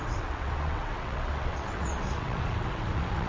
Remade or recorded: remade